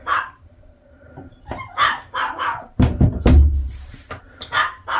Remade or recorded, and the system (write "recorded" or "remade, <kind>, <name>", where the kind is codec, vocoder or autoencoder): remade, vocoder, BigVGAN v2